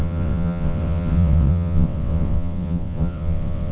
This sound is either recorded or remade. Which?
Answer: remade